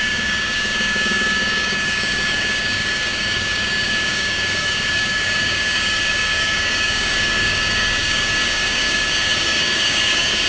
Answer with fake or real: fake